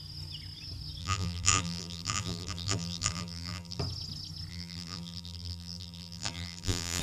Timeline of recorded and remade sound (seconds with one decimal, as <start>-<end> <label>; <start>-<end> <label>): 0.0-1.0 recorded; 1.0-3.8 remade; 3.8-4.5 recorded; 4.5-7.0 remade